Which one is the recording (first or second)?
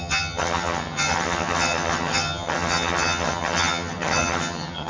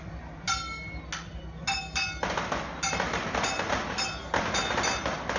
second